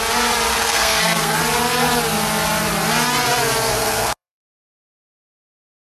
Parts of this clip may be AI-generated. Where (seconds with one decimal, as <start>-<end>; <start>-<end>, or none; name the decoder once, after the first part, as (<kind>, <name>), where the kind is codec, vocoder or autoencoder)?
0.5-1.4 (codec, SNAC); 3.7-4.7